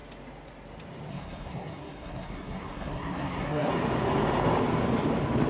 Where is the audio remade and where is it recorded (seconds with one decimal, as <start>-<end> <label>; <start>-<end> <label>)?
0.0-1.1 recorded; 1.1-3.7 remade; 3.7-5.5 recorded